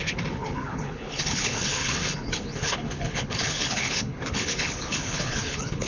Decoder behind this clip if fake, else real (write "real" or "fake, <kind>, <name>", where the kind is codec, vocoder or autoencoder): fake, codec, HILCodec